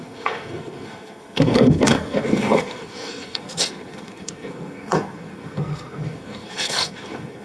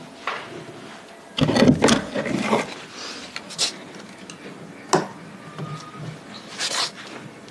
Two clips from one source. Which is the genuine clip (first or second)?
second